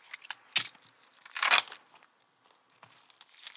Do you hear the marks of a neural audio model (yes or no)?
no